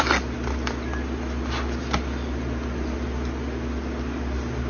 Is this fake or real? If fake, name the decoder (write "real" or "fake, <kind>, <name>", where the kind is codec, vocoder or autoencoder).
real